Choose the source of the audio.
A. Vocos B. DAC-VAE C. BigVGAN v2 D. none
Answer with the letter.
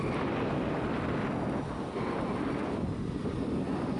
D